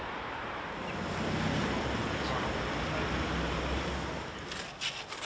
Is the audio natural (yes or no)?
yes